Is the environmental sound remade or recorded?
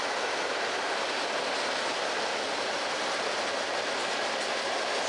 recorded